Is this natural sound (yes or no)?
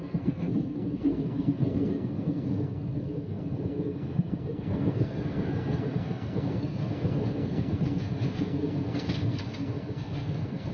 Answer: no